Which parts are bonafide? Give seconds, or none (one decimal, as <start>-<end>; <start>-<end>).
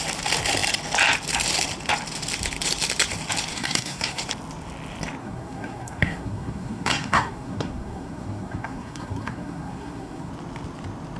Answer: 0.0-3.5; 4.2-5.2; 10.3-11.2